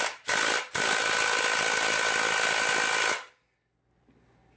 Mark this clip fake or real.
real